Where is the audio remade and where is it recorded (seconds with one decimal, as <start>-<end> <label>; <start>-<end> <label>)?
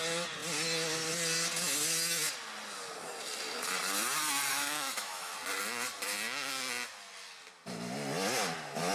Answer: 0.0-4.5 recorded; 4.5-5.3 remade; 5.3-8.9 recorded